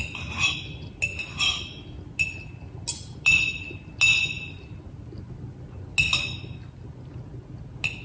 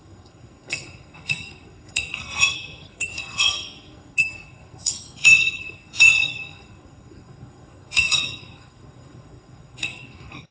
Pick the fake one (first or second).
second